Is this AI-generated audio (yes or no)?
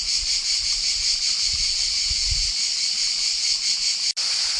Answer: no